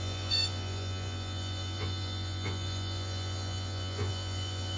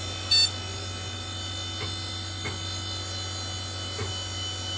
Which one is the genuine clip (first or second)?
second